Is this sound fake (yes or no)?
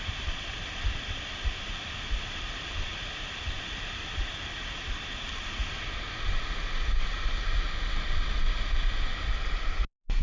no